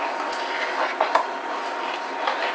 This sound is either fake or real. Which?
real